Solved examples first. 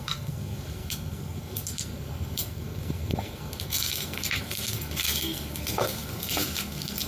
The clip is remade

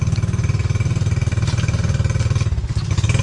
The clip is recorded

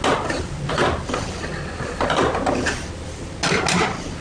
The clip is recorded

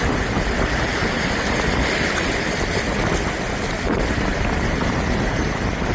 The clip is recorded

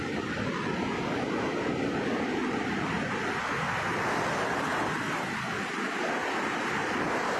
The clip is recorded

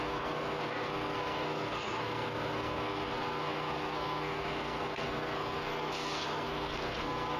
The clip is remade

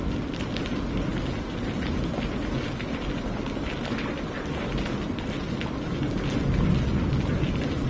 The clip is recorded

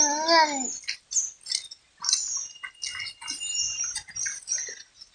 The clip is recorded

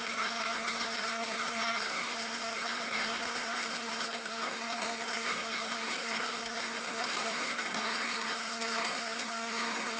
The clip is remade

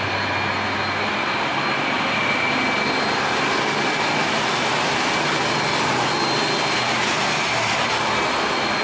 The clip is recorded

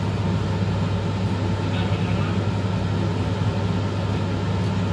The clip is recorded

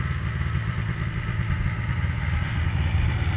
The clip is recorded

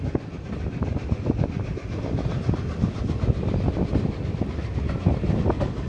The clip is recorded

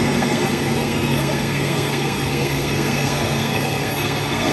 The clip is remade